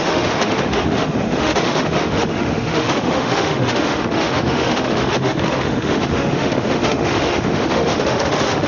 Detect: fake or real fake